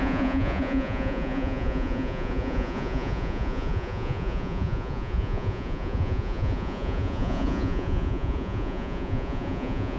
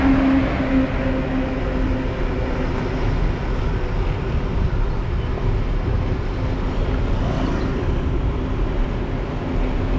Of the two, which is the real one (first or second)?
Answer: second